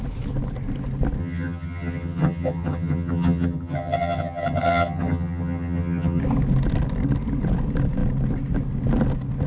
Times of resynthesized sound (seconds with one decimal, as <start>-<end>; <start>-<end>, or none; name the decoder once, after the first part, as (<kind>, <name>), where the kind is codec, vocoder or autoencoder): 1.2-6.2 (vocoder, HiFi-GAN)